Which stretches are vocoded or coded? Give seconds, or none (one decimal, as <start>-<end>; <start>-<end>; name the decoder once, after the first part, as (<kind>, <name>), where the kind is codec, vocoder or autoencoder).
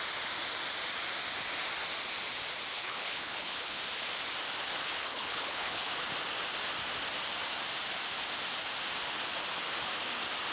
2.7-3.8 (codec, HILCodec); 4.8-5.9